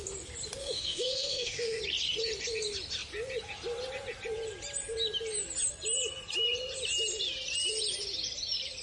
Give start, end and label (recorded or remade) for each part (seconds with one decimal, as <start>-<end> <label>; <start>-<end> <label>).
0.0-0.6 recorded; 0.6-1.8 remade; 1.8-8.8 recorded